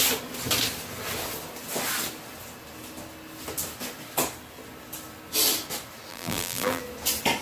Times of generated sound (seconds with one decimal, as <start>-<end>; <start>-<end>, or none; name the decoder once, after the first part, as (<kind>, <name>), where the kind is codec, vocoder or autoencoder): 6.1-6.8 (vocoder, BigVGAN v2)